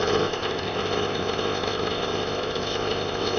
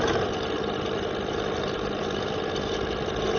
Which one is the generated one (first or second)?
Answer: first